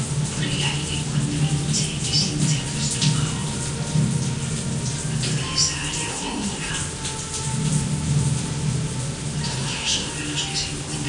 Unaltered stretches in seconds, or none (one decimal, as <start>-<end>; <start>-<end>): 0.0-6.1; 6.7-9.5; 10.1-11.1